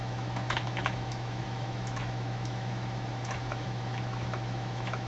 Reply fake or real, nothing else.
fake